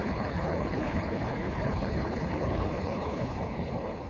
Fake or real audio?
fake